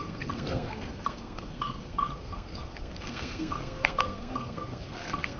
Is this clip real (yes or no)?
no